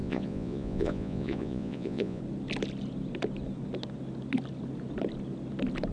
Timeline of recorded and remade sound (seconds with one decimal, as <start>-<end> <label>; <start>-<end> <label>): 0.0-2.2 remade; 2.2-5.9 recorded